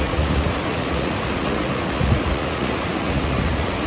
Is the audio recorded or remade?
remade